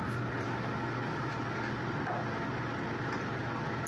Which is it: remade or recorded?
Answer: recorded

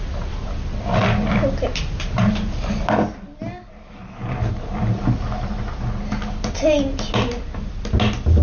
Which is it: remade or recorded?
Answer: recorded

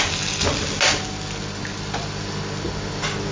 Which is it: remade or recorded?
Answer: recorded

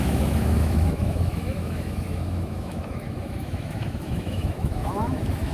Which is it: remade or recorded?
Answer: remade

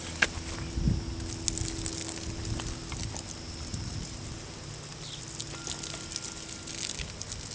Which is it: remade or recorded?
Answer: recorded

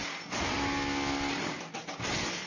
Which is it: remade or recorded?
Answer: recorded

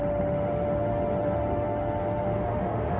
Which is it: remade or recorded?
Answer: remade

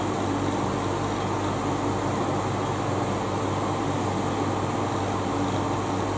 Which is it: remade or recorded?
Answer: recorded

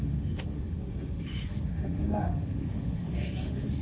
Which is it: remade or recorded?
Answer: remade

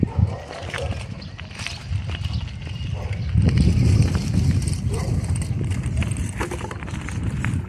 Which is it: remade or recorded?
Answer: recorded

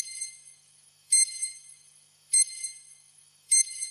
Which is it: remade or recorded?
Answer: remade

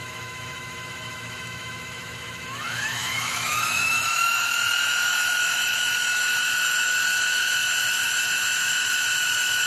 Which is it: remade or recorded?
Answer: remade